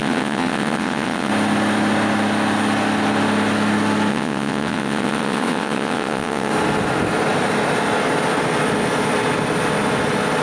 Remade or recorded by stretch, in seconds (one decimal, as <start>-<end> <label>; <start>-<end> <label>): 0.0-1.3 remade; 1.3-4.1 recorded; 4.1-6.5 remade; 6.5-10.4 recorded